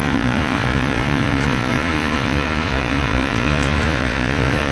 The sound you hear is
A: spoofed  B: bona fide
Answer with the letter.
A